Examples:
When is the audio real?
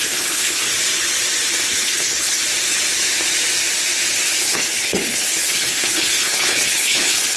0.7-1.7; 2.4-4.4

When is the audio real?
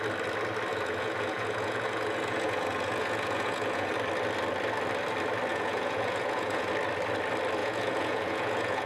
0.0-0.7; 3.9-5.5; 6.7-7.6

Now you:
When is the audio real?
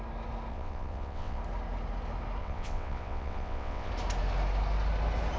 0.0-0.5; 1.4-2.4; 3.9-5.4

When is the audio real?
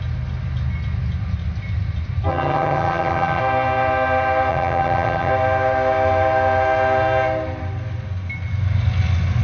0.0-2.3; 3.4-4.5; 5.3-9.4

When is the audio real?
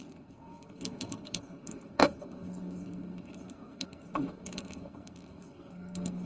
none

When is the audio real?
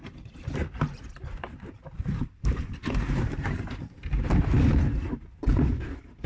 4.0-4.8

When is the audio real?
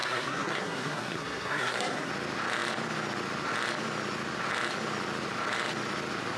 2.1-6.4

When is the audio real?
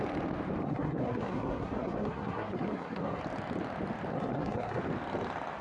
0.0-0.6; 3.2-4.1; 4.8-5.6